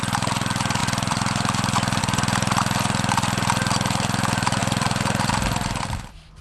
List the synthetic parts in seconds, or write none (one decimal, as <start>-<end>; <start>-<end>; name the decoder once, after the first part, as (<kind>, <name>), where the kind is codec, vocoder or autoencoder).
0.8-2.0 (vocoder, BigVGAN v2); 4.6-5.3